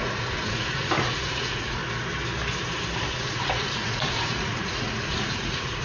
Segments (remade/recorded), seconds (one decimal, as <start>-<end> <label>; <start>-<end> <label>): 0.0-1.8 remade; 1.8-3.1 recorded; 3.1-5.8 remade